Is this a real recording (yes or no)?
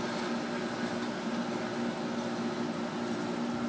yes